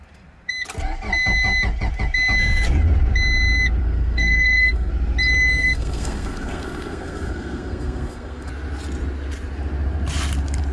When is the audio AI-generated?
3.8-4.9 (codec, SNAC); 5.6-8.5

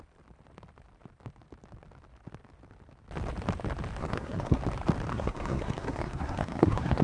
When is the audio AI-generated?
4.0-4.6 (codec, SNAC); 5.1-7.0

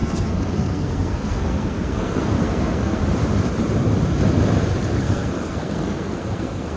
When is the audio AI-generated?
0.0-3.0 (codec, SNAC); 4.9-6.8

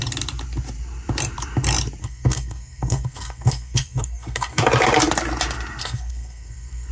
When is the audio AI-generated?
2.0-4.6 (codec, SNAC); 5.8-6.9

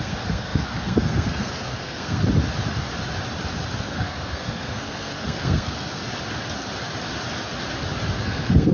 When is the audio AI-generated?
0.0-2.2 (codec, SNAC); 3.8-6.0; 8.2-8.7